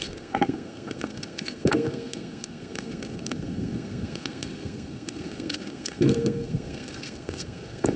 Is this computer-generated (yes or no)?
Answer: yes